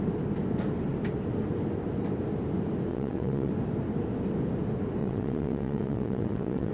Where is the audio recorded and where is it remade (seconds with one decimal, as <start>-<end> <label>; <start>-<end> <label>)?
0.0-2.9 recorded; 2.9-3.5 remade; 3.5-5.0 recorded; 5.0-6.7 remade